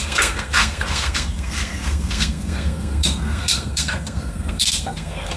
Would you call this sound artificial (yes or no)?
yes